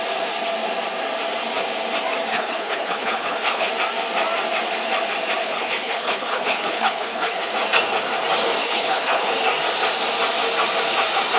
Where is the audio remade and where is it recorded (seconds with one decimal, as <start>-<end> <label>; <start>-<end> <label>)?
0.0-2.3 recorded; 2.3-3.7 remade; 3.7-5.4 recorded; 5.4-7.5 remade; 7.5-8.6 recorded; 8.6-9.3 remade; 9.3-11.4 recorded